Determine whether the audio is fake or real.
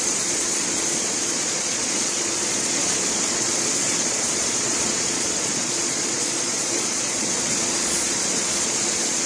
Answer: fake